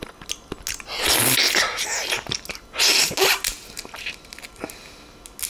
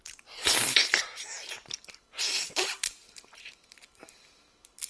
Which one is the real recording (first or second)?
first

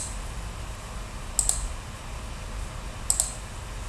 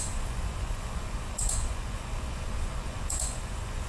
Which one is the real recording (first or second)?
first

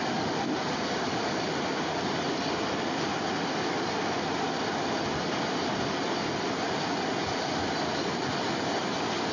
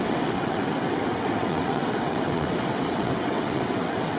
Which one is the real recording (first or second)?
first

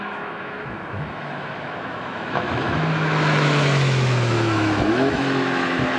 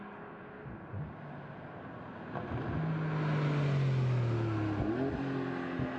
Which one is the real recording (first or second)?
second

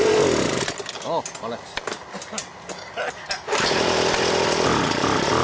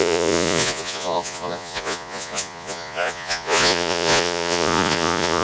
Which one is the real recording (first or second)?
first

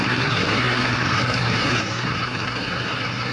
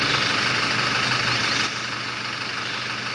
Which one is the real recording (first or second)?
second